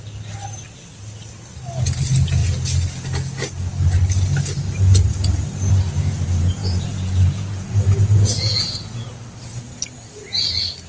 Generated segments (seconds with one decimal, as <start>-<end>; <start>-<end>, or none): 6.6-9.1